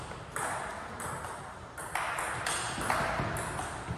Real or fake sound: real